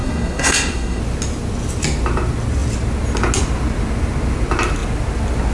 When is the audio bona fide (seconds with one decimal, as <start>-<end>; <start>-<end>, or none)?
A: 1.0-5.5